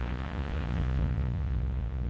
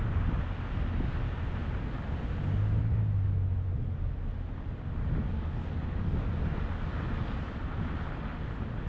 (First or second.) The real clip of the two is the second